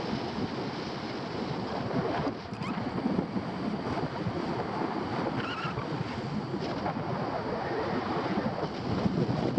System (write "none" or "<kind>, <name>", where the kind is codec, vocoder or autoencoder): none